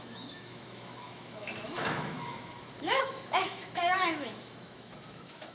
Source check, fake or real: fake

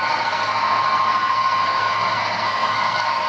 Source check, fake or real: fake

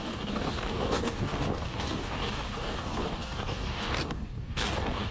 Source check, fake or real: fake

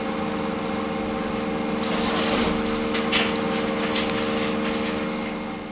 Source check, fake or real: real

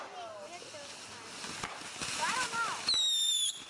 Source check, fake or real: real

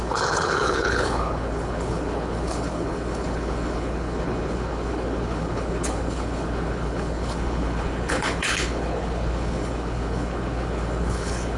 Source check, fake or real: fake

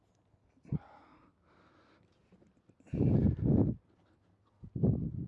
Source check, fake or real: real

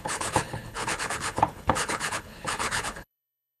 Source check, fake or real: fake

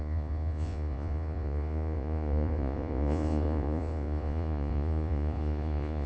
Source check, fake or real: fake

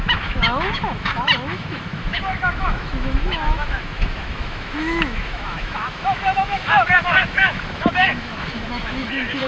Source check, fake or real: fake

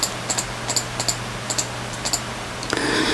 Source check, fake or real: real